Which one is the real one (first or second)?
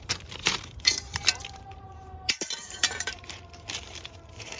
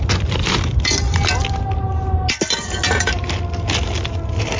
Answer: second